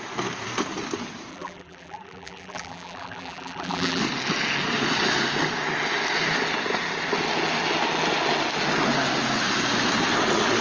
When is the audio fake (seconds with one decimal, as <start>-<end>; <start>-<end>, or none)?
1.3-4.0